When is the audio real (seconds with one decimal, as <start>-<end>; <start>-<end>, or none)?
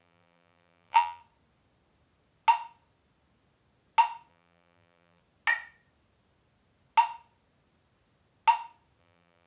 1.2-4.3; 5.2-9.0